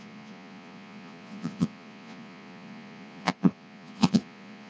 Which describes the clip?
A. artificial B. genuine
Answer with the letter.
A